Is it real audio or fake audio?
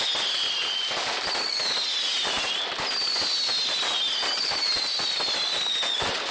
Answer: real